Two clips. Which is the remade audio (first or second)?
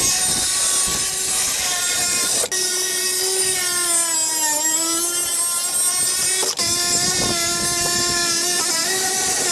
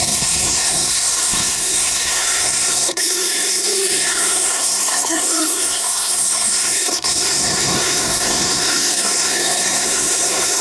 second